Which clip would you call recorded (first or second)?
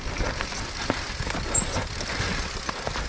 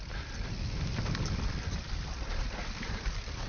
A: first